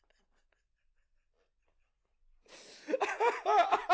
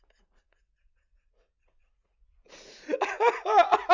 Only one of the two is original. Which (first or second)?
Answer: first